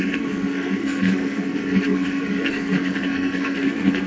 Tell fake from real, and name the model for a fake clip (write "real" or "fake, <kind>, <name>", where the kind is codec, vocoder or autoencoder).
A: fake, codec, SNAC